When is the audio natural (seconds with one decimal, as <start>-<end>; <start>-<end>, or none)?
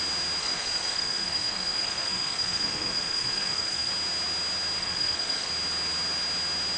0.0-0.4; 3.9-4.8; 5.5-6.8